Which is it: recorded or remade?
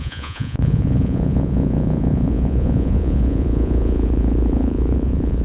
remade